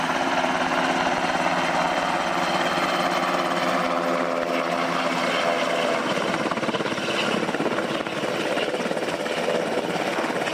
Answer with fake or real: real